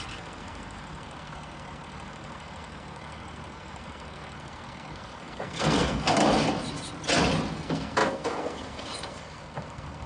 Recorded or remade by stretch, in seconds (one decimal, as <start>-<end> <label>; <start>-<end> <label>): 0.0-6.2 remade; 6.2-7.5 recorded; 7.5-10.1 remade